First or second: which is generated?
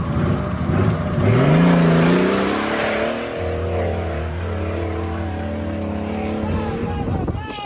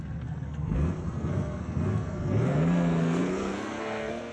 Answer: second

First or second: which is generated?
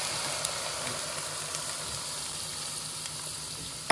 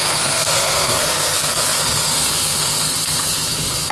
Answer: second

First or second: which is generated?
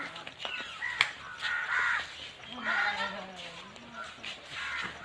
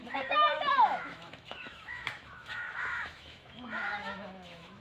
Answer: second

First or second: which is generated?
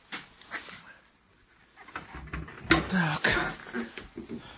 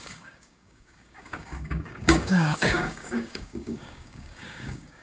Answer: second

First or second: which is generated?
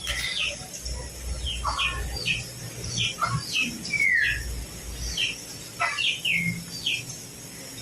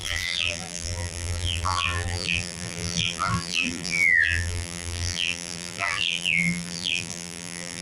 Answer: second